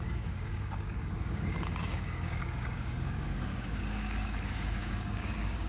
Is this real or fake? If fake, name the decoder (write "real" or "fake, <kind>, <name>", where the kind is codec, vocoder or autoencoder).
fake, codec, DAC